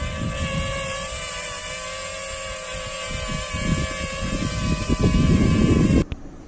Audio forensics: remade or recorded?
recorded